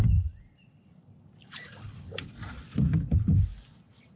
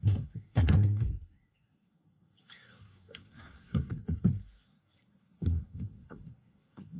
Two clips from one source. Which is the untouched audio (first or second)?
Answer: first